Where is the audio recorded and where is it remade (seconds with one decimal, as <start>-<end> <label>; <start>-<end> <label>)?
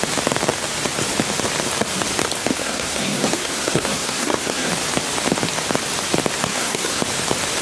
0.0-2.6 recorded; 2.6-4.7 remade; 4.7-6.4 recorded; 6.4-7.0 remade; 7.0-7.6 recorded